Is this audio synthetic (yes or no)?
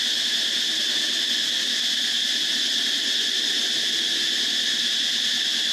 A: no